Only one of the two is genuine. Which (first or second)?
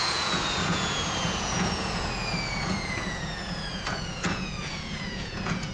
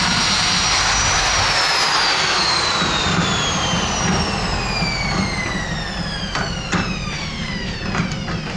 second